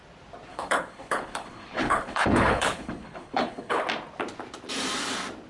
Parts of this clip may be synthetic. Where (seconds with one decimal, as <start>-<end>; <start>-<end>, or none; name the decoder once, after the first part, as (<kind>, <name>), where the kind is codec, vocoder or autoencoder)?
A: 0.5-3.8 (codec, HILCodec)